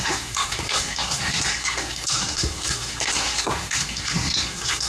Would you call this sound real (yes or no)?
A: no